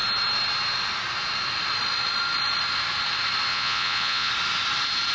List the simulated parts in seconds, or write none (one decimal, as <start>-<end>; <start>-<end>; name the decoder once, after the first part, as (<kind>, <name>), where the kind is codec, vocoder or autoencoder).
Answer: 3.5-4.3 (vocoder, Vocos)